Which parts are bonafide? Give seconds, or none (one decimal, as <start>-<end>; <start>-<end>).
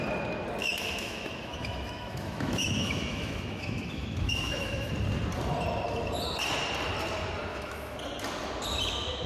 0.0-0.6; 4.9-7.5; 8.0-9.3